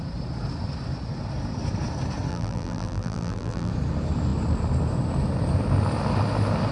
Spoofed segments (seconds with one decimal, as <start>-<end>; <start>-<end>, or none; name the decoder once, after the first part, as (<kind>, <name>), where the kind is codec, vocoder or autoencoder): 2.3-3.7 (vocoder, BigVGAN v2)